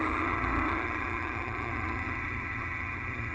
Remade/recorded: remade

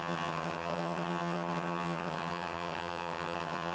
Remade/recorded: remade